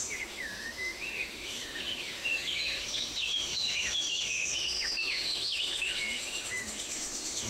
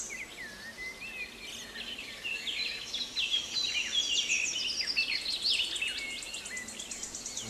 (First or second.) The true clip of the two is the second